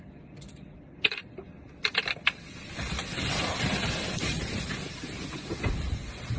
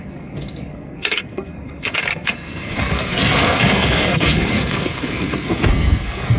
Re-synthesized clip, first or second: second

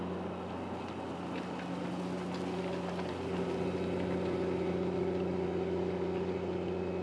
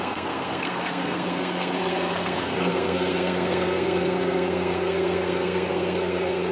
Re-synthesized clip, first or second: second